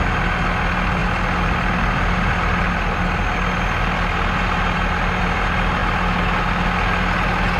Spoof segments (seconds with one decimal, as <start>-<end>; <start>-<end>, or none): none